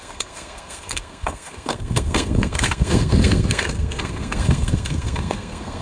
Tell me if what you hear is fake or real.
fake